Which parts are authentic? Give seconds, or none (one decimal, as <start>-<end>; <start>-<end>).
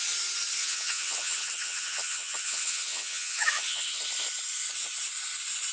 0.0-0.6; 4.0-5.7